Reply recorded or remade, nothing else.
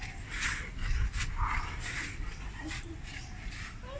recorded